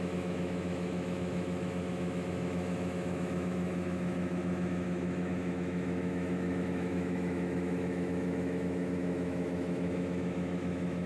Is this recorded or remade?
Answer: remade